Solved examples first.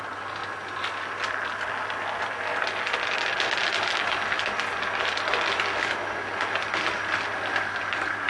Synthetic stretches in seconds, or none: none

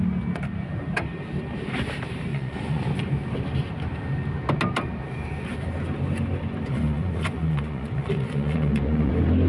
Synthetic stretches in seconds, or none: 2.3-2.8 (vocoder, Vocos); 6.7-9.1

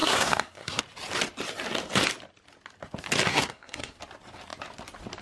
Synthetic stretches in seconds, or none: 0.0-0.8 (codec, SNAC); 3.3-4.0

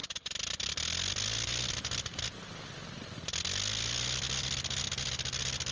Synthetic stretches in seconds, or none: none

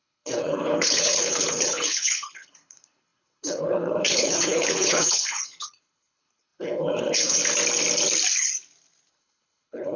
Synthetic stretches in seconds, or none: 0.0-7.4 (codec, HILCodec); 9.1-10.0

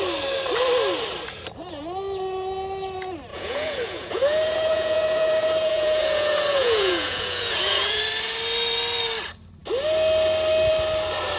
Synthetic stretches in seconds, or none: 3.3-8.0 (vocoder, Vocos)

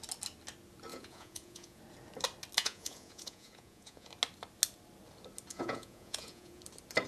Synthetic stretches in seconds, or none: 0.9-1.8 (vocoder, Vocos); 2.6-4.1; 5.5-6.6

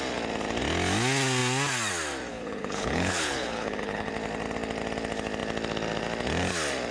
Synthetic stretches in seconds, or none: 2.3-4.1 (codec, HILCodec)